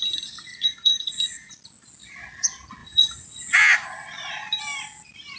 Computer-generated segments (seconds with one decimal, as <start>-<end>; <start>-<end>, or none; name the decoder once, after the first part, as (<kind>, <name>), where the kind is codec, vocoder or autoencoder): 0.5-1.5 (vocoder, Vocos); 2.8-3.6

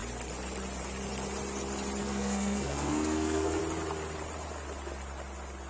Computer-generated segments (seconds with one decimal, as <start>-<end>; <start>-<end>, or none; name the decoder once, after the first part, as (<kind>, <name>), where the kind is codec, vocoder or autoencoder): 2.0-3.6 (codec, SNAC)

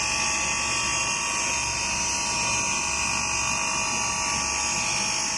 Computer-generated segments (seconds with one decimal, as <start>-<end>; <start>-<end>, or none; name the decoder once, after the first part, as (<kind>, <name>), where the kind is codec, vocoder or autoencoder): none

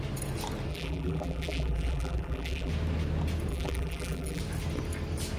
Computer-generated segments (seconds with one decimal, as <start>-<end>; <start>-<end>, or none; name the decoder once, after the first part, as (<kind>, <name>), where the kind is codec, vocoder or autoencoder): 0.7-2.7 (vocoder, BigVGAN v2); 3.5-4.4

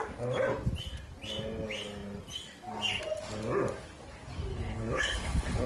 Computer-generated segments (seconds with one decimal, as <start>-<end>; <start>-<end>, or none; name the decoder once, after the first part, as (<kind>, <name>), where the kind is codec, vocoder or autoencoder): 4.5-5.7 (codec, HILCodec)